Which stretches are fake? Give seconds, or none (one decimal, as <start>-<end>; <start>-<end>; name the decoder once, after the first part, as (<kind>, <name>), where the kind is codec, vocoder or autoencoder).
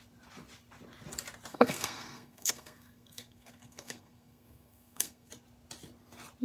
1.5-5.3 (codec, SNAC)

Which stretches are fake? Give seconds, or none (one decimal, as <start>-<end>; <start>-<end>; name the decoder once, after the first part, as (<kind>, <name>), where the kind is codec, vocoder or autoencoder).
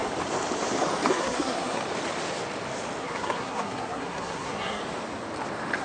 1.1-1.8 (codec, SNAC); 3.0-4.8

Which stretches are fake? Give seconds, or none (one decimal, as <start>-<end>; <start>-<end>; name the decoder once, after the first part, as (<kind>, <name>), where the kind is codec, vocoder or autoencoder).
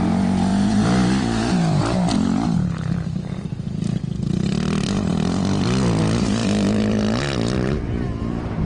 0.5-1.8 (vocoder, BigVGAN v2)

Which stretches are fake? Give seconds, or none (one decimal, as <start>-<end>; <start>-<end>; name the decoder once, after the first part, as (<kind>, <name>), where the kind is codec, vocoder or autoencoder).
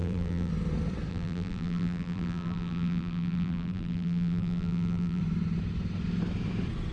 0.0-0.5 (vocoder, BigVGAN v2); 1.1-5.2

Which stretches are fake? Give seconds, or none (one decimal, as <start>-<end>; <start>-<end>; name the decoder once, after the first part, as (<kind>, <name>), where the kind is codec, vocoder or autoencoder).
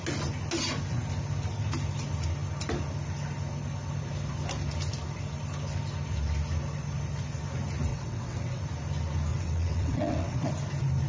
7.9-8.6 (vocoder, WaveNeXt); 9.3-10.5